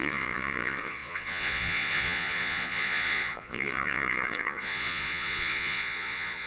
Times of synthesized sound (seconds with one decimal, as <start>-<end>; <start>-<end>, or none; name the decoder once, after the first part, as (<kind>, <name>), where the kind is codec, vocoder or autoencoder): 0.0-6.5 (vocoder, Vocos)